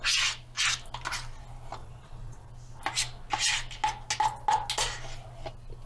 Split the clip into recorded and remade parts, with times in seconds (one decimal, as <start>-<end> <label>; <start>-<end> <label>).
0.0-1.8 recorded; 1.8-2.5 remade; 2.5-5.9 recorded